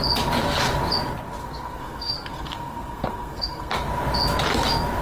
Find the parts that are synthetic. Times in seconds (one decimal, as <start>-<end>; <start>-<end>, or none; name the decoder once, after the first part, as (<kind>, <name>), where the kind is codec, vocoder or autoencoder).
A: 1.4-3.7 (codec, SNAC)